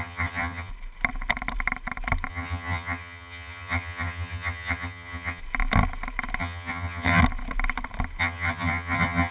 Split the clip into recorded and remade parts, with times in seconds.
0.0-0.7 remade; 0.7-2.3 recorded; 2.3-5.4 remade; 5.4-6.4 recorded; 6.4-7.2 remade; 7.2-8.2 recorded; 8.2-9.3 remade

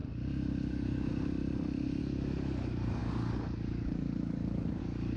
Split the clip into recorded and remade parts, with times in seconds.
0.0-0.7 recorded; 0.7-1.1 remade; 1.1-2.0 recorded; 2.0-5.2 remade

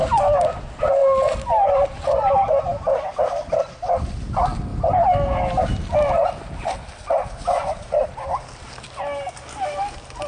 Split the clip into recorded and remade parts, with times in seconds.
0.0-10.3 recorded

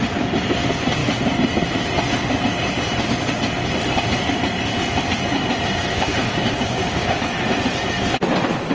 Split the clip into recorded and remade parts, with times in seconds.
0.0-5.9 recorded; 5.9-7.2 remade; 7.2-8.7 recorded

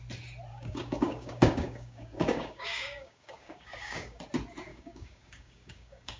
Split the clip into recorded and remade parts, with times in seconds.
0.0-0.5 recorded; 0.5-4.2 remade; 4.2-4.7 recorded; 4.7-6.2 remade